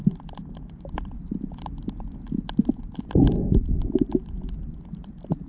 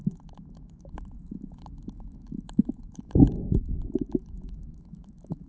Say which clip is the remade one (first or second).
second